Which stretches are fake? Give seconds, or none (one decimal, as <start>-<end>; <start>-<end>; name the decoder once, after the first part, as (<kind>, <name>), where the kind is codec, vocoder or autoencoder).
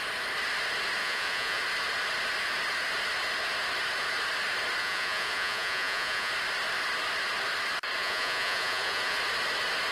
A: 1.0-1.6 (vocoder, Vocos); 4.8-6.3; 8.0-9.2